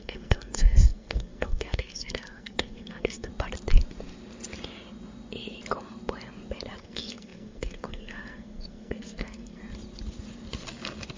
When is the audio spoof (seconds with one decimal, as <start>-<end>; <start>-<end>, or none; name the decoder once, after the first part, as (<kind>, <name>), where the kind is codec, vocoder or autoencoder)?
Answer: 0.0-3.3 (codec, SNAC); 6.8-9.6